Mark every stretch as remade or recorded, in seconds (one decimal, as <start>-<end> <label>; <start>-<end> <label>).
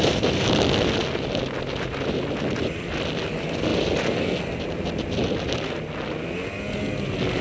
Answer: 0.0-7.4 recorded